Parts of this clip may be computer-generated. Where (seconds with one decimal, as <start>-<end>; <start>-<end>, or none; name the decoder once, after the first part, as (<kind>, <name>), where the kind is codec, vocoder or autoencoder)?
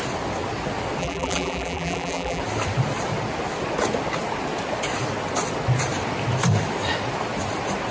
1.0-2.4 (vocoder, BigVGAN v2)